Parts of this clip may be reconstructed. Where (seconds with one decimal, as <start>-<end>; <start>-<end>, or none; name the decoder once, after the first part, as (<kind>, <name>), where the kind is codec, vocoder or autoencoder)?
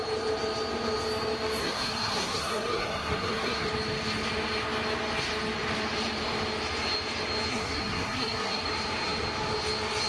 1.6-3.7 (codec, SNAC); 7.5-8.7